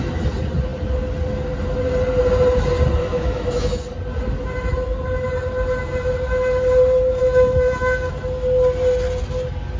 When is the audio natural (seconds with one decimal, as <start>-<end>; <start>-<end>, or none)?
0.0-3.0; 3.8-7.2; 8.1-9.8